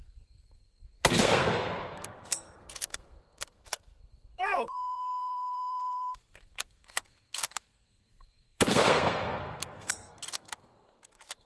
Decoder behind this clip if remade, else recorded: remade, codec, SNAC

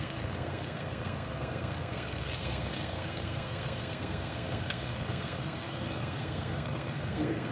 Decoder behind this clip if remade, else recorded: remade, codec, SNAC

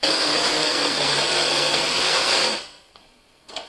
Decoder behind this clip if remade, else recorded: remade, codec, SNAC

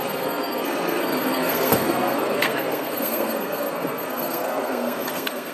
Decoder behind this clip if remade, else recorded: remade, codec, SNAC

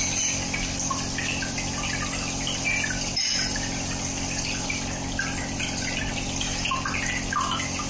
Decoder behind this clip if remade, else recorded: recorded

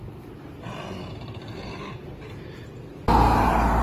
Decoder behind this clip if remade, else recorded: recorded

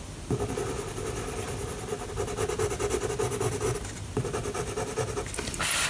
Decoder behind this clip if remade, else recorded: recorded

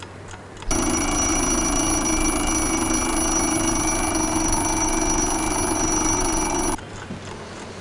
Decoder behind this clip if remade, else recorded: recorded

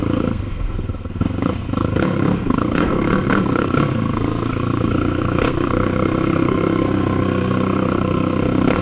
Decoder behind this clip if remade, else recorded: remade, codec, SNAC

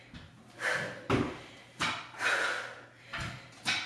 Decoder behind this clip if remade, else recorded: recorded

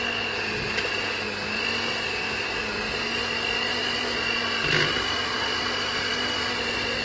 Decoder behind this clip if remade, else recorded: recorded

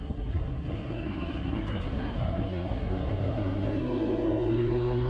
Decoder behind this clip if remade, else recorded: remade, codec, SNAC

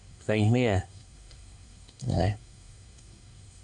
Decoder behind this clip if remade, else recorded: remade, codec, SNAC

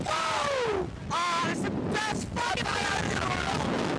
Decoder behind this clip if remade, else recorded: recorded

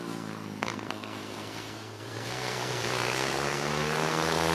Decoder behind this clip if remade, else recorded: remade, codec, SNAC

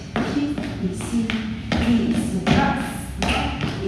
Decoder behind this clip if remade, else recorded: recorded